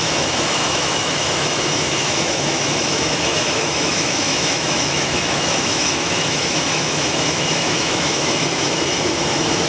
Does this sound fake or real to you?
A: fake